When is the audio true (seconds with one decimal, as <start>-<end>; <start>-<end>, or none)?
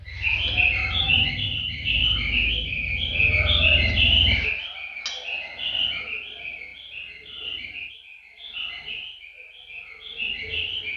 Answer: 0.0-0.8; 1.3-11.0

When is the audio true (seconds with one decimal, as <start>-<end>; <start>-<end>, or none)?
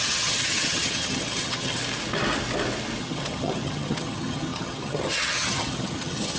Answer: 1.8-3.0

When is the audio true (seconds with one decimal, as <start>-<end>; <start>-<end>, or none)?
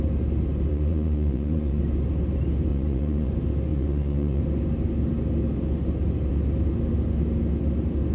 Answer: 0.0-0.7; 1.8-2.7; 3.3-3.7; 4.4-8.1